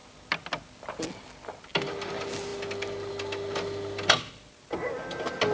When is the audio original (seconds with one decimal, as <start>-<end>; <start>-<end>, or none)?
0.0-5.5